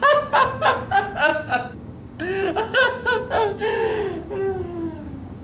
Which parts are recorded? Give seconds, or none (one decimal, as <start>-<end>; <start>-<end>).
none